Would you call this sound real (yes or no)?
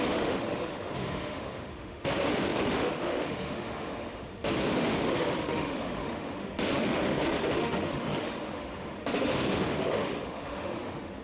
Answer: no